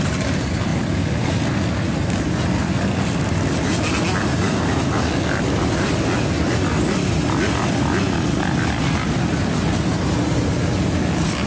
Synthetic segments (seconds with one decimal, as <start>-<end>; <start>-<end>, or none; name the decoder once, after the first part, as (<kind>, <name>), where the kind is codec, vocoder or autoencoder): none